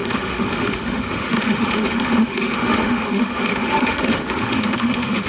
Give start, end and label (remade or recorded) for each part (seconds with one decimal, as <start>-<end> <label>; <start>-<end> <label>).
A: 0.0-5.3 remade